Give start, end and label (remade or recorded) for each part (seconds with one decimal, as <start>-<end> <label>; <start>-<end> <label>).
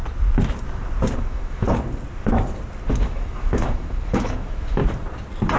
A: 0.0-1.2 recorded; 1.2-1.7 remade; 1.7-2.9 recorded; 2.9-4.8 remade; 4.8-5.6 recorded